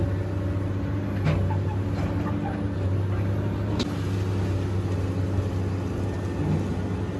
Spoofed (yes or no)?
no